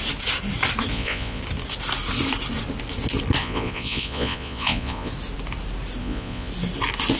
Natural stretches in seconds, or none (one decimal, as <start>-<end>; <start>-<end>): 0.0-0.9; 1.4-3.4; 5.1-6.0; 6.5-7.2